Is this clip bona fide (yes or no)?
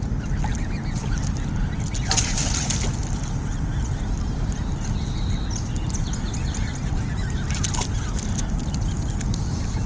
yes